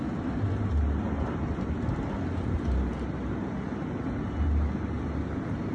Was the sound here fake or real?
real